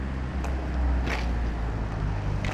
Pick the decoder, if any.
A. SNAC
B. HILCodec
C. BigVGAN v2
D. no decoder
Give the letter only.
D